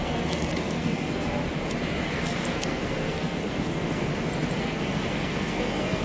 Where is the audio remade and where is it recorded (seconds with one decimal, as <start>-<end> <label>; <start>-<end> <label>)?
0.0-1.4 remade; 1.4-2.1 recorded; 2.1-4.1 remade; 4.1-4.6 recorded; 4.6-6.0 remade

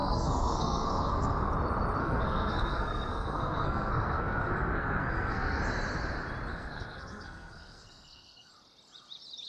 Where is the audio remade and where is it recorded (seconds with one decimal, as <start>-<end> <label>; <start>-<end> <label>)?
0.0-1.5 remade; 1.5-2.0 recorded; 2.0-5.6 remade; 5.6-6.5 recorded; 6.5-8.5 remade; 8.5-9.5 recorded

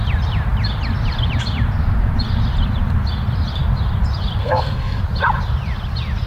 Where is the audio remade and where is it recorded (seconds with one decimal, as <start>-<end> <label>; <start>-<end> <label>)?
0.0-4.4 recorded; 4.4-5.0 remade; 5.0-6.3 recorded

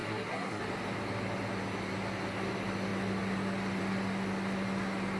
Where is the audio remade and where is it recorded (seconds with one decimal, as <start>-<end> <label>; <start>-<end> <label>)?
0.0-0.6 remade; 0.6-5.2 recorded

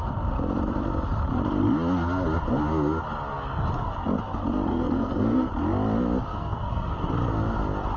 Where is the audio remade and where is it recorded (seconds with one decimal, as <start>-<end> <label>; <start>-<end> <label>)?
0.0-4.7 recorded; 4.7-5.5 remade; 5.5-6.3 recorded; 6.3-7.1 remade; 7.1-8.0 recorded

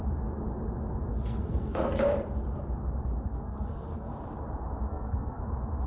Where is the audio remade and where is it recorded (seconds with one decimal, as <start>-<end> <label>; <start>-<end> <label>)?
0.0-1.1 recorded; 1.1-1.9 remade; 1.9-3.3 recorded; 3.3-4.1 remade; 4.1-4.9 recorded; 4.9-5.4 remade; 5.4-5.9 recorded